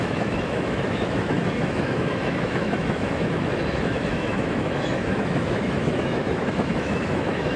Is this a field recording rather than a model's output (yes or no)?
no